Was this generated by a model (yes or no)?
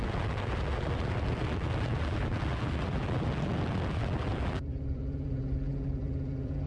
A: yes